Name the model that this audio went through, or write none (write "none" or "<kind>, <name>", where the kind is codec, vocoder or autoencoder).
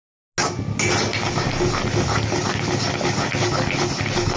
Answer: none